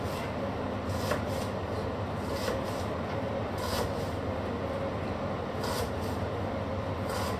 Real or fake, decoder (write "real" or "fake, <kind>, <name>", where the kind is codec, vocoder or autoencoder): real